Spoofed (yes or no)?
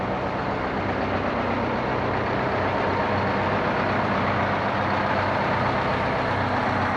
no